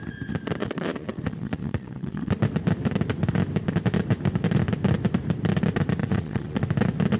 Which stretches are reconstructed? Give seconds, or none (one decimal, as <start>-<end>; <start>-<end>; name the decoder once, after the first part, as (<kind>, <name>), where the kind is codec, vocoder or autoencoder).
0.6-2.3 (vocoder, Vocos); 6.0-6.6